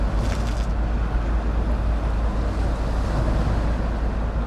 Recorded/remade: recorded